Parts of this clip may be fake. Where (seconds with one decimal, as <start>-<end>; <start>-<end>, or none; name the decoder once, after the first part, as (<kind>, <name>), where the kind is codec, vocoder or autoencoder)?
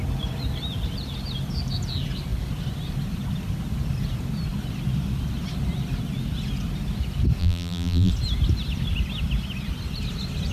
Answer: 7.4-8.1 (vocoder, BigVGAN v2)